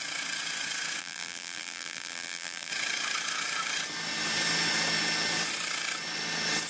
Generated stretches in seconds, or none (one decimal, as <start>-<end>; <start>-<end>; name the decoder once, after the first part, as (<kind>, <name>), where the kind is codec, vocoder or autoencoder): 1.0-2.7 (vocoder, BigVGAN v2)